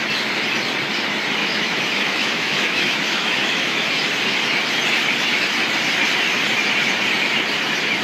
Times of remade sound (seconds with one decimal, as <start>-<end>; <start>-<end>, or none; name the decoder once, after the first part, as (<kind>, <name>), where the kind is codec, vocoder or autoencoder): 1.4-3.9 (autoencoder, DAC-VAE)